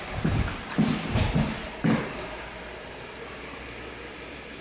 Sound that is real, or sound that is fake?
real